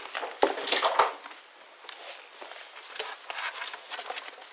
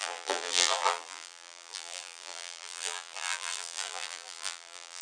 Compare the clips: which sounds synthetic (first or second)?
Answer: second